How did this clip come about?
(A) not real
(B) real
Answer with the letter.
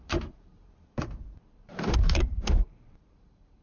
A